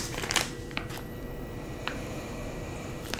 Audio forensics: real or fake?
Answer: fake